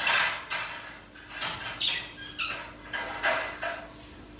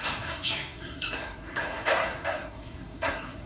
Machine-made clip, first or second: second